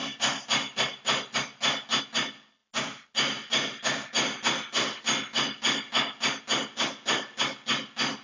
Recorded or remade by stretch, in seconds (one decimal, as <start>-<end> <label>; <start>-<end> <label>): 0.0-8.2 recorded